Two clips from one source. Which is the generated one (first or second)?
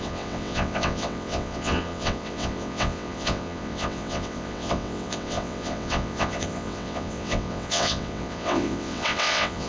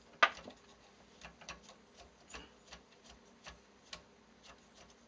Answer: first